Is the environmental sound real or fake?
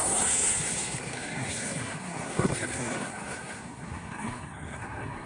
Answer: fake